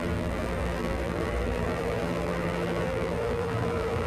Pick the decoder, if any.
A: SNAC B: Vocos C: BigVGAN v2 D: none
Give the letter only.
C